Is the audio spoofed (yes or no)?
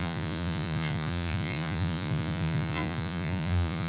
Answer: yes